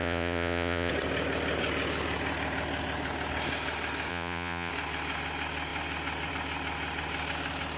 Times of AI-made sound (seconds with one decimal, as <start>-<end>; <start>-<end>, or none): 0.0-0.9; 4.1-4.7